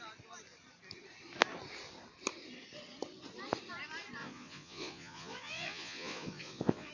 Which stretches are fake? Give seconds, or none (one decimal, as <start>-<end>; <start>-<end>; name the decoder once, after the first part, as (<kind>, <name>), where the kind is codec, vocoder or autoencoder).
4.2-6.9 (vocoder, Vocos)